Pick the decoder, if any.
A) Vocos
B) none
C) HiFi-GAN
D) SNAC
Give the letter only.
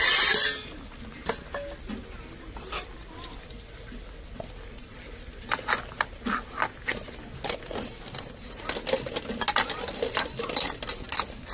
B